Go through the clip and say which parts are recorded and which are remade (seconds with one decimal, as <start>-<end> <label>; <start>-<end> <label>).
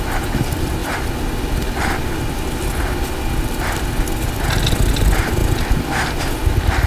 0.0-6.9 recorded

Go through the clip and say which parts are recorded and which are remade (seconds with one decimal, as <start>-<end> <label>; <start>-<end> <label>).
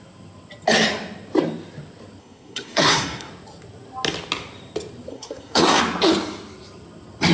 0.0-2.2 recorded; 2.2-3.3 remade; 3.3-5.1 recorded; 5.1-5.8 remade; 5.8-7.3 recorded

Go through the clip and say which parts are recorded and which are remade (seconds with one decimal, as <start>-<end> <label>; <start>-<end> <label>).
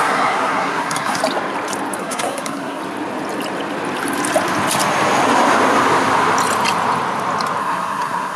0.0-1.2 remade; 1.2-2.0 recorded; 2.0-2.8 remade; 2.8-7.6 recorded; 7.6-8.4 remade